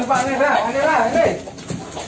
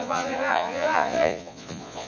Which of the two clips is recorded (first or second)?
first